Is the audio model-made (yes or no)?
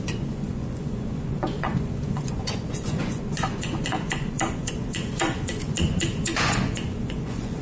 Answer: yes